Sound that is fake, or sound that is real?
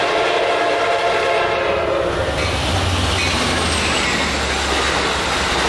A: real